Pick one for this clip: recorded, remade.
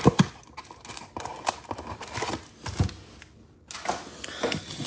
recorded